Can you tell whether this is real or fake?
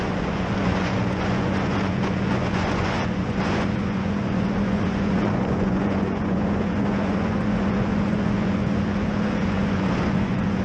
fake